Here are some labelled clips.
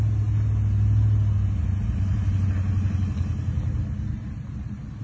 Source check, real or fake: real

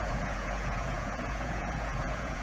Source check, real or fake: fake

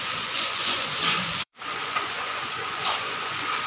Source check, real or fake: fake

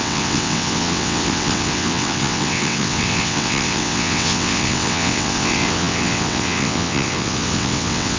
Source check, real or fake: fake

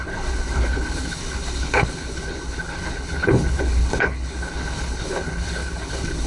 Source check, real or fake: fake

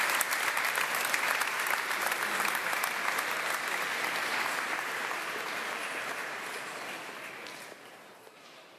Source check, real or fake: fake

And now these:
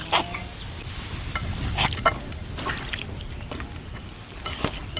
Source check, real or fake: real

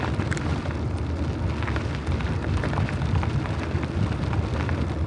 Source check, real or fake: real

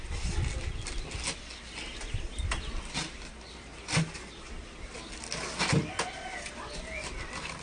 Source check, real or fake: real